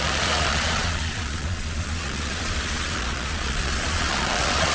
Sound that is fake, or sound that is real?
fake